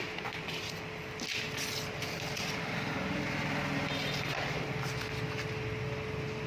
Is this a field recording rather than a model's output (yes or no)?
yes